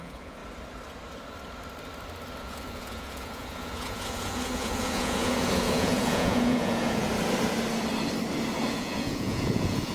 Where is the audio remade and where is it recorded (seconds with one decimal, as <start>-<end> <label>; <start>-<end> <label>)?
0.0-0.4 remade; 0.4-2.4 recorded; 2.4-7.1 remade; 7.1-8.7 recorded; 8.7-9.9 remade